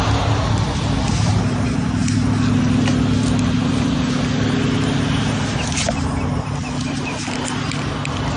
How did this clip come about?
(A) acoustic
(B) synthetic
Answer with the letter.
A